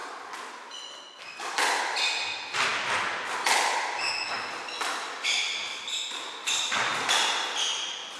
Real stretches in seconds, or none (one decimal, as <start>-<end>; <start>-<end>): 0.0-8.2